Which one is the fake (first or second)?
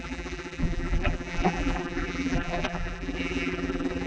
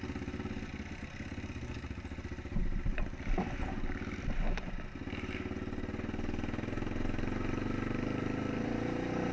first